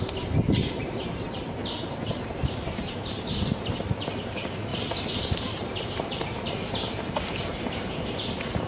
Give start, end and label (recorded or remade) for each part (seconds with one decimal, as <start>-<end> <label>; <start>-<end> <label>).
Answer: 0.0-1.6 remade; 1.6-2.1 recorded; 2.1-4.7 remade; 4.7-5.2 recorded; 5.2-8.7 remade